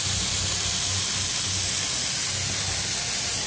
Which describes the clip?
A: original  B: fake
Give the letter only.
A